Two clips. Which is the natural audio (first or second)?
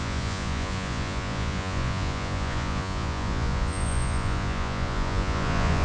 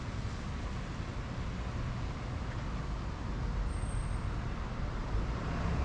second